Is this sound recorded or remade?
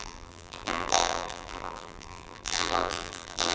remade